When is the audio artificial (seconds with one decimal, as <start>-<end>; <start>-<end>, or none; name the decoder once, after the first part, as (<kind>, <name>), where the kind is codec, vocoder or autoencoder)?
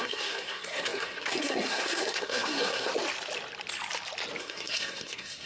0.0-2.9 (codec, SNAC); 4.4-5.5